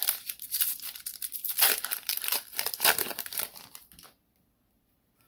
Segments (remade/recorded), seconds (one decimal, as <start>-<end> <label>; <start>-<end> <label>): 0.0-5.3 remade